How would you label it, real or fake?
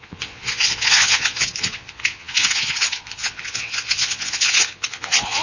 fake